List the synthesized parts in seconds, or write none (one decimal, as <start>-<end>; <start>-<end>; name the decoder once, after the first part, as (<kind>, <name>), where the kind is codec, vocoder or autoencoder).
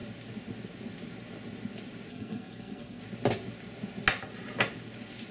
2.1-3.0 (codec, SNAC)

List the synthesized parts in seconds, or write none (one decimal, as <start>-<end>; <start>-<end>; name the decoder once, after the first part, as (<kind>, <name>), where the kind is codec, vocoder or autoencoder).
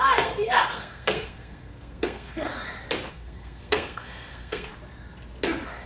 0.0-2.5 (codec, SNAC); 3.1-4.7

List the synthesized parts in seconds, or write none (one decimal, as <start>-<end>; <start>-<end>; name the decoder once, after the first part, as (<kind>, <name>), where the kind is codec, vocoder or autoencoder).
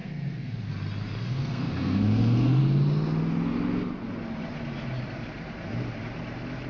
0.0-0.7 (codec, SNAC); 1.3-2.6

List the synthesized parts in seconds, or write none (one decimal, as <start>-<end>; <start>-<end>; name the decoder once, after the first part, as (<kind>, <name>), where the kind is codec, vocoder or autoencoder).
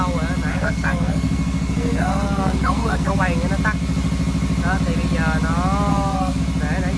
0.5-3.2 (codec, SNAC); 5.9-6.4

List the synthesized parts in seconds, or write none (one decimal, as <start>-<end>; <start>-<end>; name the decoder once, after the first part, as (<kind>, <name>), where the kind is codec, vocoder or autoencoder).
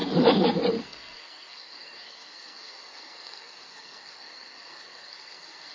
0.8-5.7 (codec, SNAC)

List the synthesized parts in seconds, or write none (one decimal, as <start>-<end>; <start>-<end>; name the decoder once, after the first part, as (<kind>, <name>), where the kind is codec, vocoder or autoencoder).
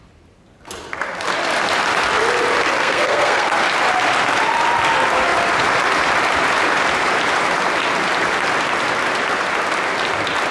2.8-3.6 (codec, SNAC)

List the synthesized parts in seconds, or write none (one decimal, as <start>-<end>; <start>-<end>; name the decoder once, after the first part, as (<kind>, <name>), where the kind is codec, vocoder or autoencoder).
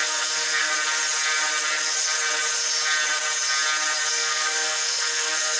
0.0-0.7 (codec, SNAC); 4.1-5.6